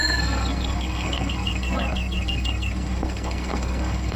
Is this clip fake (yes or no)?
yes